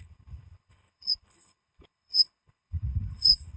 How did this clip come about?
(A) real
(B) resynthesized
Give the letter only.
B